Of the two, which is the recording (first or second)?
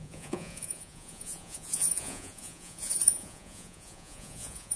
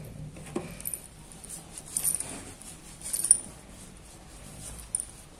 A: second